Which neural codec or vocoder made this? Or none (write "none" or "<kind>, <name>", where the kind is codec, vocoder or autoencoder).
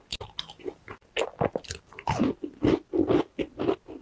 none